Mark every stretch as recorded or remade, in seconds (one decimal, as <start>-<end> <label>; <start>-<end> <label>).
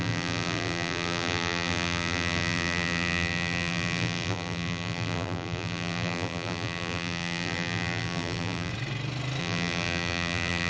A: 0.0-8.7 remade; 8.7-9.4 recorded; 9.4-10.7 remade